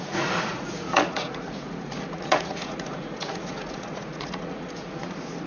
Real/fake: fake